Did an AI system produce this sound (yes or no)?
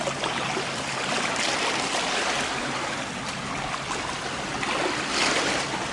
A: no